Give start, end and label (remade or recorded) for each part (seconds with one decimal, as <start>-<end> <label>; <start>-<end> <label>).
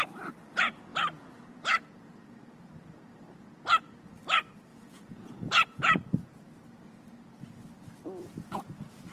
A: 0.0-4.7 recorded; 4.7-6.0 remade; 6.0-9.1 recorded